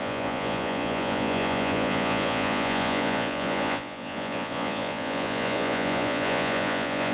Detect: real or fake fake